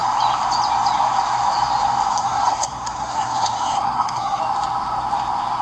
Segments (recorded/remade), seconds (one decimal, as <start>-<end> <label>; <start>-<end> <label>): 0.0-2.2 recorded; 2.2-4.4 remade; 4.4-5.6 recorded